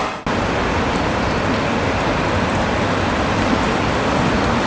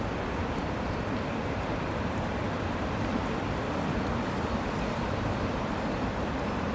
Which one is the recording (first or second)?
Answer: first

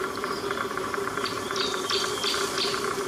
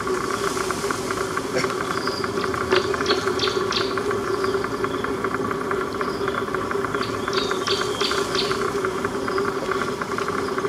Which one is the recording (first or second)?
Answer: second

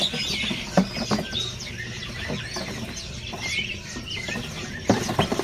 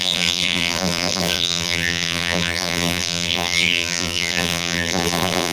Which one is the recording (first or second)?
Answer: first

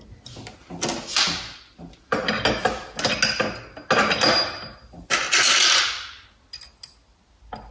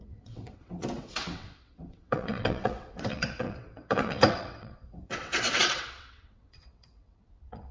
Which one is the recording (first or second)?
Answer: first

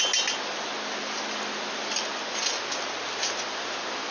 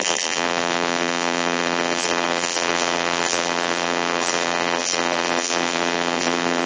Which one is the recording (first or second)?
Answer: first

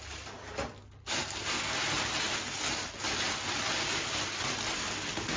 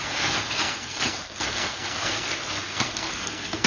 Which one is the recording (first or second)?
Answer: first